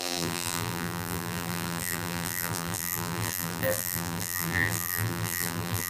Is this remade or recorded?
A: remade